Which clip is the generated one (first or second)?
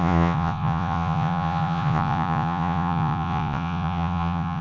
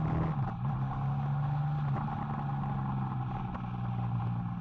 first